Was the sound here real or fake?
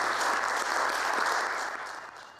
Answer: real